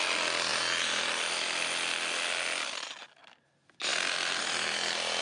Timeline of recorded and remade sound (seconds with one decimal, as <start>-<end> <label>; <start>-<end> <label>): 0.0-5.2 recorded